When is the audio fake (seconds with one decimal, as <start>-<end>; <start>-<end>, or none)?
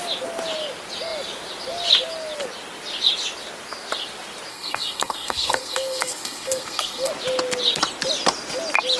4.5-7.1